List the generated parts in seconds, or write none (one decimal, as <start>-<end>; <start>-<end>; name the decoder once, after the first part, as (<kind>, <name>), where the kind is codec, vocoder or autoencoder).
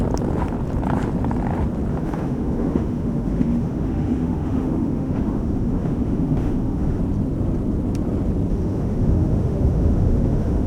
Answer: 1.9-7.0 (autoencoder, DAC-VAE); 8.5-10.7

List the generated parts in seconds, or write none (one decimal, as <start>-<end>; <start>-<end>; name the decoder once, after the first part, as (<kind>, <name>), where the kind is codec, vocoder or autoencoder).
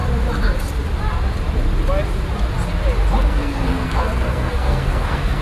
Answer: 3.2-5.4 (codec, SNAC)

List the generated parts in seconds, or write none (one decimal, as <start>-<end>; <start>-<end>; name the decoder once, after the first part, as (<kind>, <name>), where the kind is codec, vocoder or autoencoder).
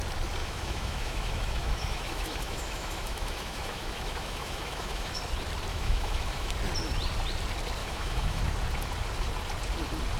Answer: 0.4-5.2 (autoencoder, DAC-VAE); 5.7-6.5; 7.8-8.4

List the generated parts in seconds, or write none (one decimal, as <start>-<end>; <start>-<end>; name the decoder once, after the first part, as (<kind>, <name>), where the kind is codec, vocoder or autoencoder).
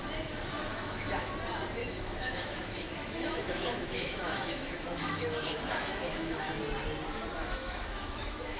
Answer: 0.7-1.3 (autoencoder, DAC-VAE); 1.8-6.5; 7.4-8.6